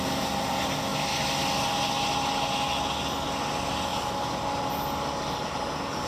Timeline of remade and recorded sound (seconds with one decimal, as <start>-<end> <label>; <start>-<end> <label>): 0.0-6.1 recorded